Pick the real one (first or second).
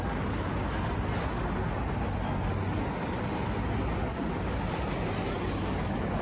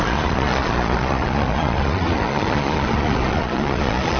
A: first